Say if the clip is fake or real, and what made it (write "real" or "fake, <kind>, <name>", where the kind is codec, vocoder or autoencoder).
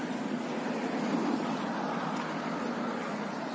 real